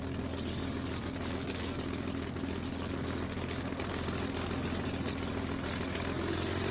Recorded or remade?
recorded